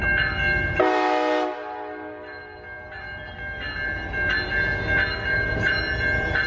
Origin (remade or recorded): recorded